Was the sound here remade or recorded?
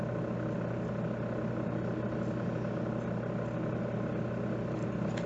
recorded